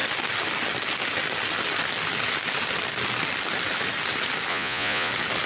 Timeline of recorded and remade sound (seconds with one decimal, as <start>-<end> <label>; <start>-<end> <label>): 0.0-4.5 recorded; 4.5-5.1 remade; 5.1-5.5 recorded